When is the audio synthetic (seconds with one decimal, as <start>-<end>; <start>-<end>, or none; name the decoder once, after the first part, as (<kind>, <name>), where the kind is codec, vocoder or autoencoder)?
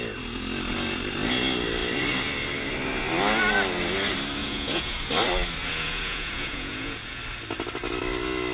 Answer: 4.4-5.1 (vocoder, Vocos); 5.6-7.2